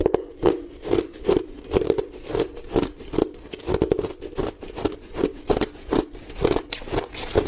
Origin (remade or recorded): recorded